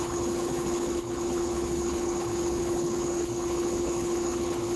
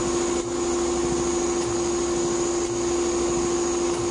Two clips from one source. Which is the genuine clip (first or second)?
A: second